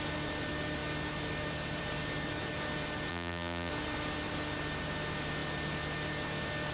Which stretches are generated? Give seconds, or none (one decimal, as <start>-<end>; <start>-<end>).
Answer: 3.1-3.7